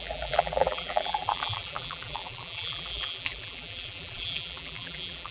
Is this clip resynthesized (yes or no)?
yes